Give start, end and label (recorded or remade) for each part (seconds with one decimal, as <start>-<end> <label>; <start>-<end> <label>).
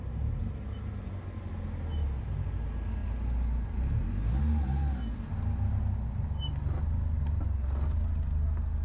0.0-8.8 recorded